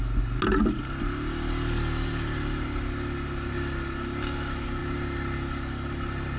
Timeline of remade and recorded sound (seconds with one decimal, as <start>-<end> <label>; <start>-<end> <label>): 0.0-6.4 recorded